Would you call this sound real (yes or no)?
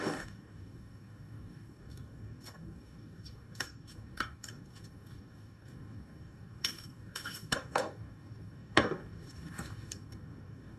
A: no